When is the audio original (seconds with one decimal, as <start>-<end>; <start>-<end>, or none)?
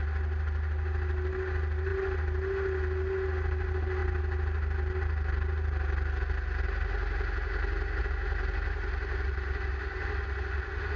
0.0-11.0